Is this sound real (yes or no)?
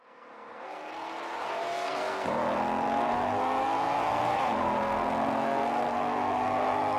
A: no